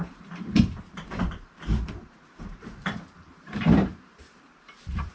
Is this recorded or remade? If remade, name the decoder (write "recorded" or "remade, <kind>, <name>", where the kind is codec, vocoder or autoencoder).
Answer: remade, vocoder, BigVGAN v2